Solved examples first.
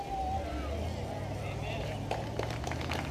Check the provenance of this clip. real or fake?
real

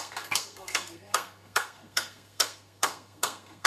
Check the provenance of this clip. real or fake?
fake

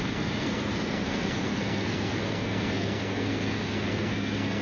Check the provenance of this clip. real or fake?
fake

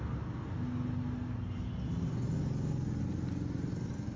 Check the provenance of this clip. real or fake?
real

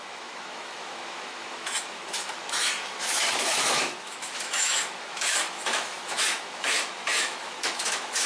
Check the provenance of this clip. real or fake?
fake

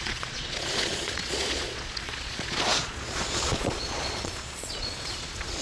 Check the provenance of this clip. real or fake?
fake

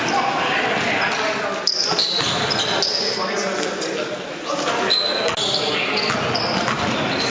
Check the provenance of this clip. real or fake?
real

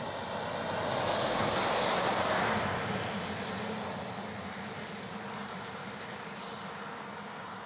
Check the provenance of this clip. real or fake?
real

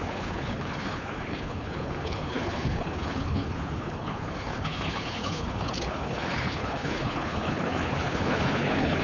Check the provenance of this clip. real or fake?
fake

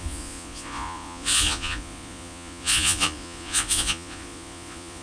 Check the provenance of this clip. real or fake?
fake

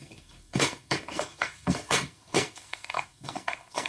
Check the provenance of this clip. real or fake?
fake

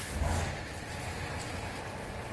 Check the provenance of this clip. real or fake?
real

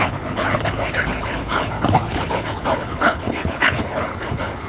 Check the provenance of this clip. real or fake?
fake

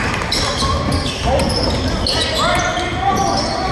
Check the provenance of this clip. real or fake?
real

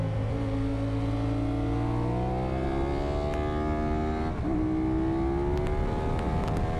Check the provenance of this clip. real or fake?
real